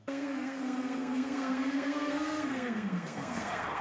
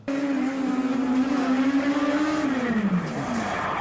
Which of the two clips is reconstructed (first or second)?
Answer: first